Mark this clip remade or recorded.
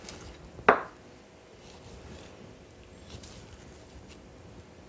recorded